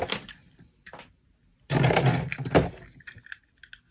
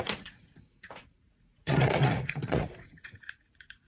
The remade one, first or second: second